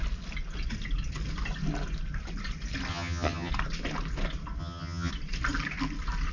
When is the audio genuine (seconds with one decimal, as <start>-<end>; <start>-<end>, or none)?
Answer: 0.0-2.9; 3.5-4.6; 5.1-6.3